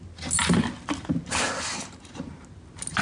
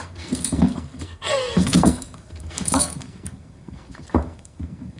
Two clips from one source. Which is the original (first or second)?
first